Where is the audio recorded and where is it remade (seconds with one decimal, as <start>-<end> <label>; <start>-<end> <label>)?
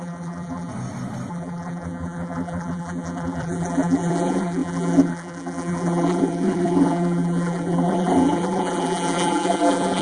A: 0.0-0.7 remade; 0.7-1.3 recorded; 1.3-10.0 remade